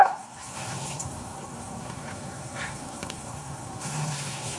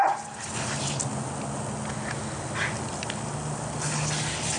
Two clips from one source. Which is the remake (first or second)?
first